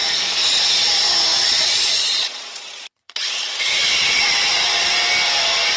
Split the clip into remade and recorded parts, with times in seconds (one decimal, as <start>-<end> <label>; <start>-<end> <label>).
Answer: 0.0-1.4 recorded; 1.4-4.9 remade; 4.9-5.8 recorded